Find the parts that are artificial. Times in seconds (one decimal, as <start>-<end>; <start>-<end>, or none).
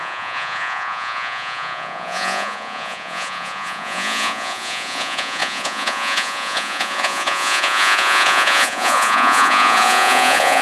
0.0-10.6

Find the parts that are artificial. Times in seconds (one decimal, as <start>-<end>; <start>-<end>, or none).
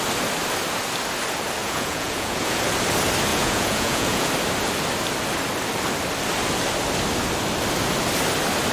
1.6-2.6; 3.3-4.3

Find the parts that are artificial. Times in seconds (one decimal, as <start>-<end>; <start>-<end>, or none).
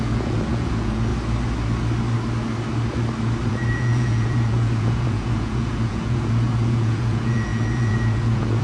0.0-1.1; 3.5-8.6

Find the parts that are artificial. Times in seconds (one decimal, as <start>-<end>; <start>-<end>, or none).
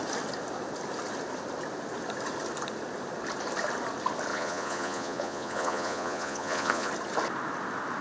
4.3-6.9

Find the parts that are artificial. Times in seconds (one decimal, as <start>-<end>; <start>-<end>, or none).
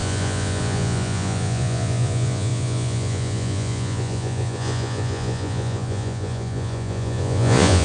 0.0-7.8